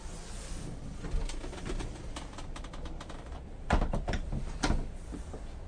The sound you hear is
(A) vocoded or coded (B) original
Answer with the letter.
B